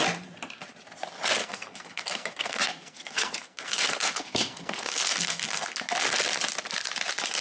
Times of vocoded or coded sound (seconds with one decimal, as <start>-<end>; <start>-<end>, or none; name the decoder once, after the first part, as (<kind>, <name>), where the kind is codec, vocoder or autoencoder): 1.4-5.7 (codec, SNAC)